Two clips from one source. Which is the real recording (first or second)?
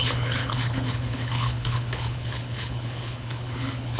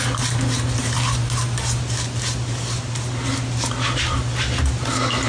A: second